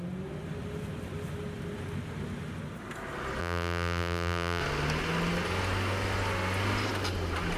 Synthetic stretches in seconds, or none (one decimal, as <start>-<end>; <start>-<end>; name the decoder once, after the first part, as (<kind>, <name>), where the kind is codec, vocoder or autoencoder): 3.4-4.6 (vocoder, BigVGAN v2)